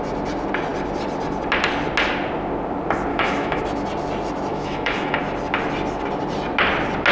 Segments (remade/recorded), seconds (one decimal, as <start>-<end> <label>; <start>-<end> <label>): 0.0-3.1 recorded; 3.1-3.6 remade; 3.6-4.5 recorded; 4.5-5.2 remade; 5.2-7.1 recorded